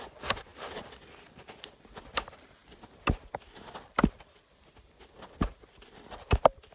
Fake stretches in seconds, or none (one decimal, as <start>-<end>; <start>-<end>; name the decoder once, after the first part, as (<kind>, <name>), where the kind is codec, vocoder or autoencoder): none